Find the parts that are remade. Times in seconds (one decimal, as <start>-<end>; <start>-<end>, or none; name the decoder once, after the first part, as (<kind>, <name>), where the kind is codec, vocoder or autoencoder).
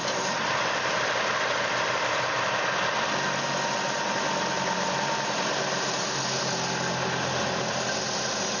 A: none